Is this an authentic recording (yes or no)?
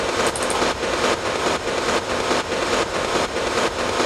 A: yes